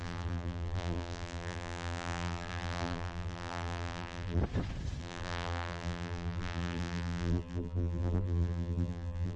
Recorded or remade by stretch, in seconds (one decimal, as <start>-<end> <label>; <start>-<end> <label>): 0.0-4.4 remade; 4.4-5.0 recorded; 5.0-9.4 remade